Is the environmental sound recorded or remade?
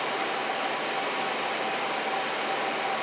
recorded